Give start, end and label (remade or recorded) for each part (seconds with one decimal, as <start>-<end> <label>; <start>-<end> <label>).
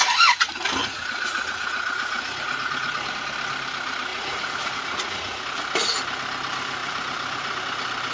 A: 0.0-0.8 recorded; 0.8-3.1 remade; 3.1-4.1 recorded; 4.1-5.4 remade; 5.4-6.8 recorded; 6.8-7.6 remade; 7.6-8.1 recorded